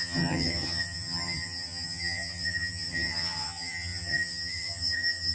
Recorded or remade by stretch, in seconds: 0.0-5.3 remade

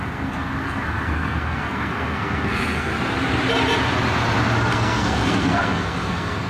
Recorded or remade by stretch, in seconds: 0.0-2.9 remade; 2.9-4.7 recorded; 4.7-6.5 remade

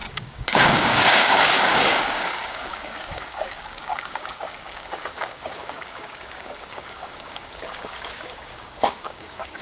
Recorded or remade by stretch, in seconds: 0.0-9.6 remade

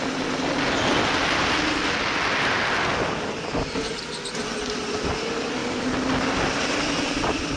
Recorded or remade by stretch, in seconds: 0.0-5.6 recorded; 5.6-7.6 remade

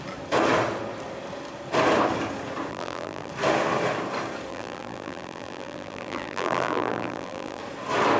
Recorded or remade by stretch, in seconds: 0.0-2.7 recorded; 2.7-3.3 remade; 3.3-4.5 recorded; 4.5-7.6 remade; 7.6-8.2 recorded